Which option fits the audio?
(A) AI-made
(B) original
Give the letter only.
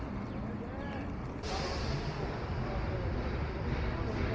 B